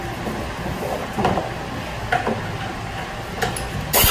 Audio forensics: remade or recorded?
recorded